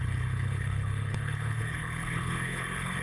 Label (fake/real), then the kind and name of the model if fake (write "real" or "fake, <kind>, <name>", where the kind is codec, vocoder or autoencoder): fake, codec, HILCodec